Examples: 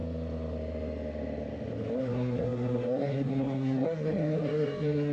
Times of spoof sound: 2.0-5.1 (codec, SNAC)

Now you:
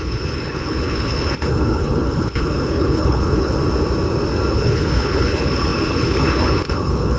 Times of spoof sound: 0.0-3.6 (codec, HILCodec); 4.5-7.2

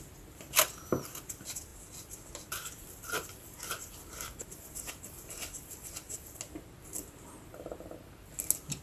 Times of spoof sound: none